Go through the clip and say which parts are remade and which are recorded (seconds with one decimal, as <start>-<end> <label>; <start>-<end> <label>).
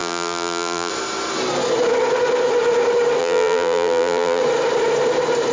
0.0-0.9 remade; 0.9-3.2 recorded; 3.2-4.4 remade; 4.4-5.5 recorded